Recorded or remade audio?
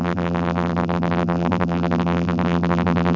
remade